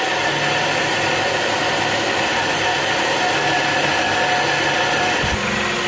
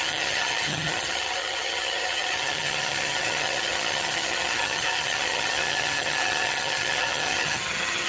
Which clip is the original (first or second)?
first